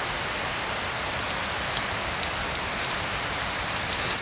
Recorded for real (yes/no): yes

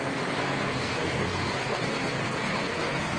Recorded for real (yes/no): no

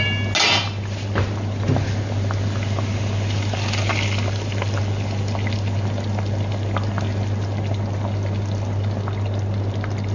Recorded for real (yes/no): yes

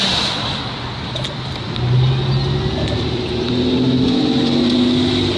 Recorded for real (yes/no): yes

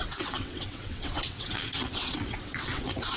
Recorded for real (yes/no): no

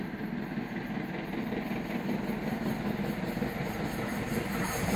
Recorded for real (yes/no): yes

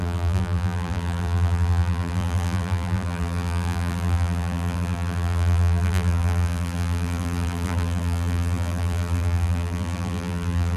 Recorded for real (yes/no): no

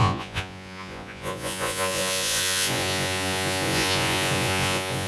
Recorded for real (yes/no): no